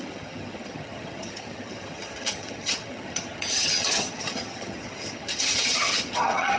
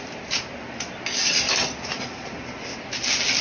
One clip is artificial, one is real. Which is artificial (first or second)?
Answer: first